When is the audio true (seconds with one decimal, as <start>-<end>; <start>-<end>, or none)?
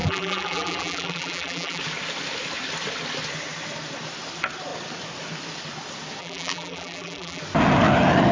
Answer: 1.8-6.2; 7.4-8.3